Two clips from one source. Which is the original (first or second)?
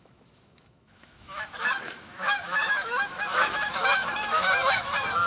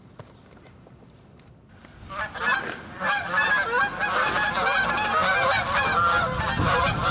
second